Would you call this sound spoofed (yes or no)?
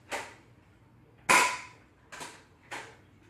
no